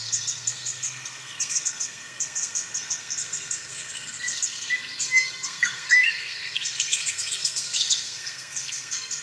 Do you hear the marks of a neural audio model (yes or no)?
yes